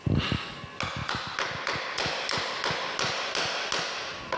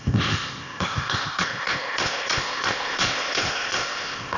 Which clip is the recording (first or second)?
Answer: first